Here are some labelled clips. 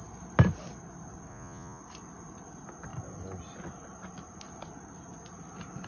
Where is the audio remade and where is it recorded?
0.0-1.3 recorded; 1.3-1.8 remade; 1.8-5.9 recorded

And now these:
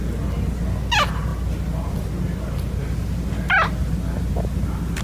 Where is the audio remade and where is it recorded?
0.0-5.0 recorded

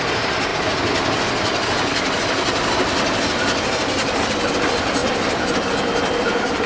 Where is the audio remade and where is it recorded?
0.0-6.7 recorded

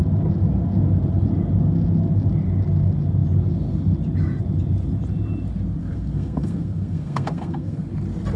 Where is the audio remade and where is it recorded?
0.0-5.8 recorded; 5.8-7.9 remade; 7.9-8.4 recorded

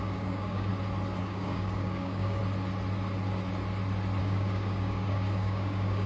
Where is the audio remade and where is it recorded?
0.0-0.7 remade; 0.7-1.2 recorded; 1.2-2.4 remade; 2.4-4.2 recorded; 4.2-6.1 remade

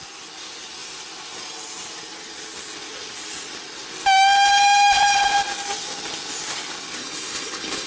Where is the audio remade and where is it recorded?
0.0-7.0 recorded; 7.0-7.9 remade

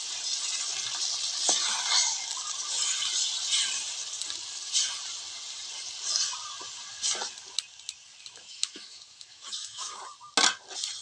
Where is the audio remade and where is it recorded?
0.0-8.3 recorded; 8.3-10.0 remade; 10.0-11.0 recorded